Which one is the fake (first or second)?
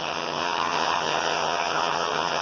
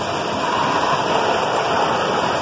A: first